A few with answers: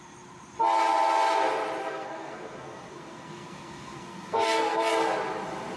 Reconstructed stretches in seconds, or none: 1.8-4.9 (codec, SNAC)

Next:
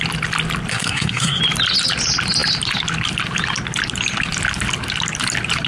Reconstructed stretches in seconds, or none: 0.7-1.4 (codec, SNAC)

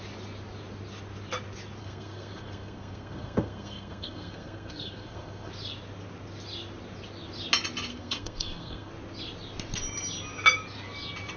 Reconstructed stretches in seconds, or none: 1.8-5.5 (codec, SNAC); 7.9-8.9

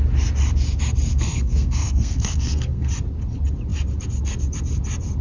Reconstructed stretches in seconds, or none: 1.1-2.9 (codec, SNAC)